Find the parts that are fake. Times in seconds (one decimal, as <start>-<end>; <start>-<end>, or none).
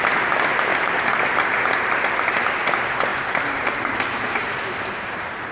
0.7-1.3; 3.1-4.6